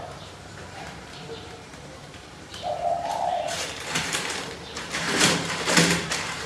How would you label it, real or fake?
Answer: fake